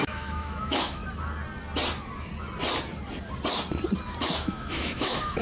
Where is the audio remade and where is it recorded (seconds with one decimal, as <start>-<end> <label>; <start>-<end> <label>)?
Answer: 0.0-1.0 remade; 1.0-4.2 recorded; 4.2-5.4 remade